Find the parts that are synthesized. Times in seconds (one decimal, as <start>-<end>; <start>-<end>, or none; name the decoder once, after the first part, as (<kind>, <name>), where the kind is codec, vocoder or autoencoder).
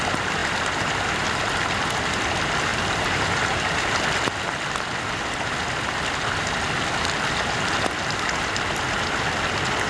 0.4-1.1 (vocoder, BigVGAN v2); 2.7-3.6